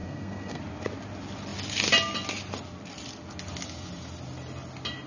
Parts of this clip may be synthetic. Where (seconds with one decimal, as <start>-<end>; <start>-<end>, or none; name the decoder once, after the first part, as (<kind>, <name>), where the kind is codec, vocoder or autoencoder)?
0.0-0.6 (codec, SNAC)